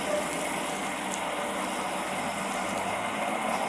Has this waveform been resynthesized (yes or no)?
no